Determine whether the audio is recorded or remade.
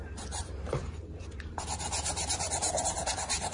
remade